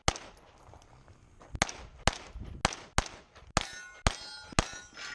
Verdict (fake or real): real